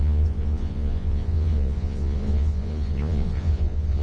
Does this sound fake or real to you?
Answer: fake